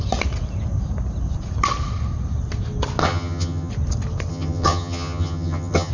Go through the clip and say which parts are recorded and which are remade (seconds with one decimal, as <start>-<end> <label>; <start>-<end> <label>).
0.0-3.0 recorded; 3.0-3.7 remade; 3.7-4.3 recorded; 4.3-5.9 remade